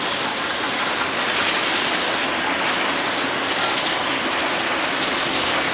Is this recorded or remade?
recorded